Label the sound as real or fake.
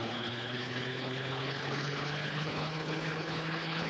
fake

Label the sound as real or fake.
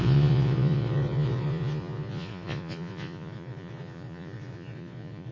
fake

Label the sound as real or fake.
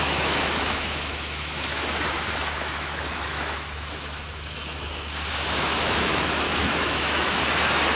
fake